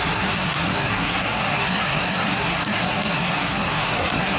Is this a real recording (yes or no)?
no